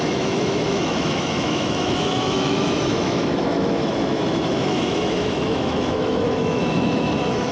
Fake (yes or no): yes